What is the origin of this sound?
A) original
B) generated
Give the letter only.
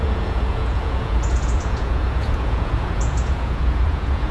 B